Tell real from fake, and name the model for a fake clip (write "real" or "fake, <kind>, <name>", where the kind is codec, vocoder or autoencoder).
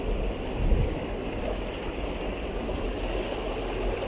real